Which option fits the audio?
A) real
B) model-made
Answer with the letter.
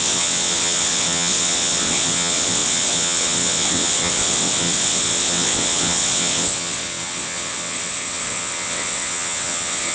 B